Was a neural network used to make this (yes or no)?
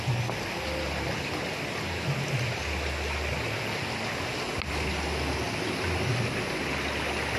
no